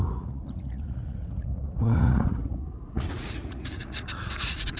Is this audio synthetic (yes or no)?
yes